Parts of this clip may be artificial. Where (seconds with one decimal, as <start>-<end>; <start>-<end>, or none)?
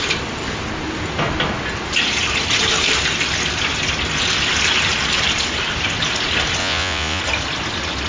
6.6-7.2